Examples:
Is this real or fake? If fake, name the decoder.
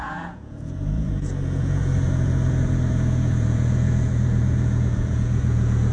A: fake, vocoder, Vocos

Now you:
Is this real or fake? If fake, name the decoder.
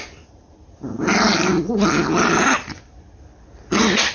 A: real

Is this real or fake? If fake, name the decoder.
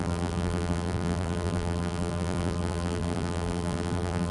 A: fake, vocoder, BigVGAN v2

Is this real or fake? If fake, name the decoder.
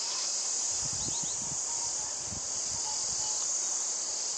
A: real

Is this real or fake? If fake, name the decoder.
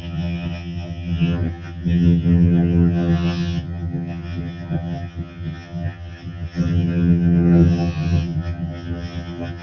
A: fake, vocoder, HiFi-GAN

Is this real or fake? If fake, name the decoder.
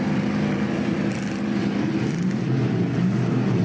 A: fake, vocoder, BigVGAN v2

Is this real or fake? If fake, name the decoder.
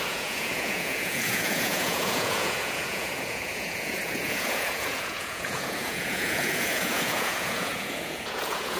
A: fake, vocoder, Vocos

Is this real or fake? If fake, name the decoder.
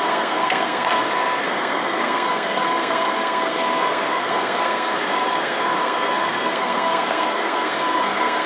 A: fake, codec, SNAC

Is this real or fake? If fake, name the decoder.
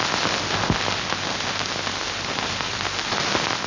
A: real